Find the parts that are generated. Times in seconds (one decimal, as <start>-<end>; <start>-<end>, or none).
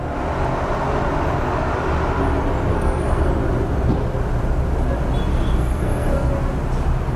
2.7-3.3; 5.3-6.3